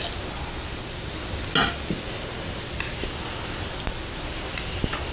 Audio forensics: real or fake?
real